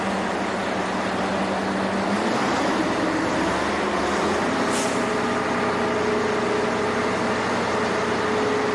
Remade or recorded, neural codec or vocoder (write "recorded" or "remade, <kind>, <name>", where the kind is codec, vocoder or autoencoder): recorded